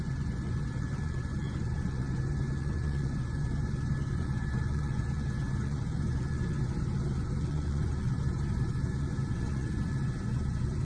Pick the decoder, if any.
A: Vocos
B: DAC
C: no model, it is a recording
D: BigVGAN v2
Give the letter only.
A